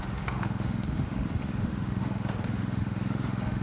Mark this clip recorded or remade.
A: remade